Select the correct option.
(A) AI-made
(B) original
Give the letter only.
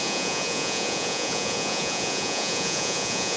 A